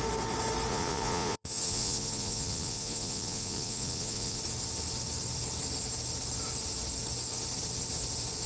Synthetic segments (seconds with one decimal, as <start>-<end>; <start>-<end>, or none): 0.7-4.4